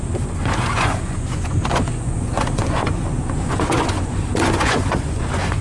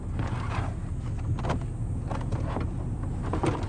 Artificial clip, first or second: first